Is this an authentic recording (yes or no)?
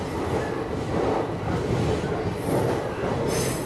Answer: yes